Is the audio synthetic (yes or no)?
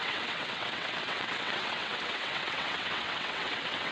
yes